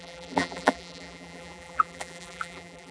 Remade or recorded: remade